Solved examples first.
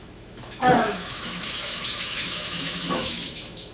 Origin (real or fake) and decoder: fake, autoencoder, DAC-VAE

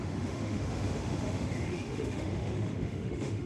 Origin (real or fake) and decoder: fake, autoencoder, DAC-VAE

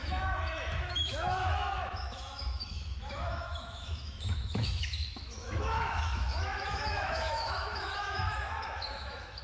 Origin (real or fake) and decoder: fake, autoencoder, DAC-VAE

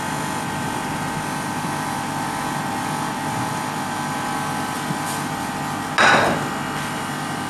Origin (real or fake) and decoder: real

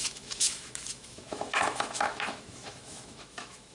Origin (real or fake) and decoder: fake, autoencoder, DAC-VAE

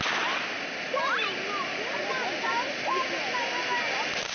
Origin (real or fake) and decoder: real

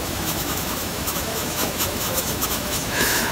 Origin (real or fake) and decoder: fake, autoencoder, DAC-VAE